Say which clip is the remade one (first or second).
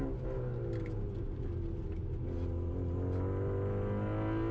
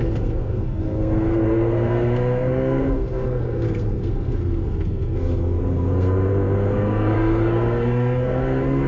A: second